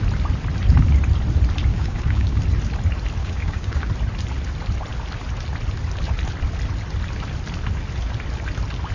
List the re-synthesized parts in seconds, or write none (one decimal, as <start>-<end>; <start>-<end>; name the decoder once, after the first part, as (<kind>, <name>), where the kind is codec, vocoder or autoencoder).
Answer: 1.7-2.4 (codec, DAC); 3.2-3.9